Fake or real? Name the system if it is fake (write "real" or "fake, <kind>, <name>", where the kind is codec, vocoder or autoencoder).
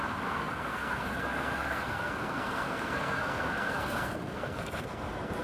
fake, codec, SNAC